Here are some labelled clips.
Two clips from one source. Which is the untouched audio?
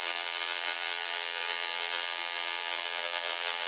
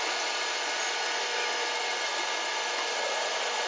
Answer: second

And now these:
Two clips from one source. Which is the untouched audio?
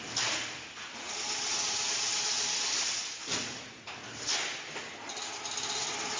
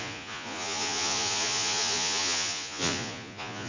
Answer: first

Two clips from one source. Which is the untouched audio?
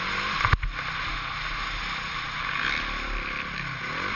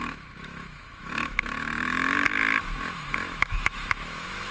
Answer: first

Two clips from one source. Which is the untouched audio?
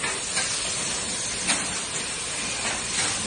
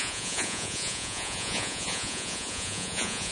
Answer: first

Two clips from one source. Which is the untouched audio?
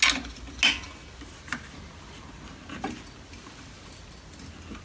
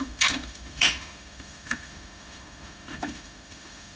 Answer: first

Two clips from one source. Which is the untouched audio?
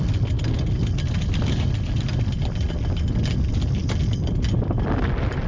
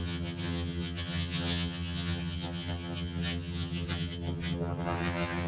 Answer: first